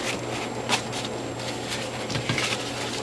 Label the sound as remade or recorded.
recorded